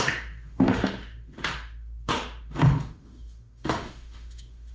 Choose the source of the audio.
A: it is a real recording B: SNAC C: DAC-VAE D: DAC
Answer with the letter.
C